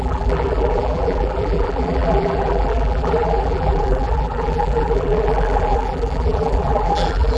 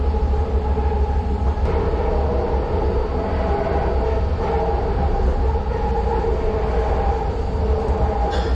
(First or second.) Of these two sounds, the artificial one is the first